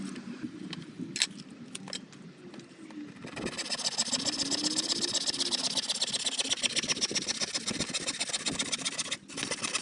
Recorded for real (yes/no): yes